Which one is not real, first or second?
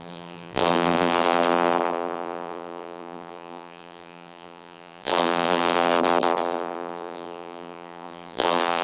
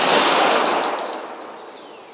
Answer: first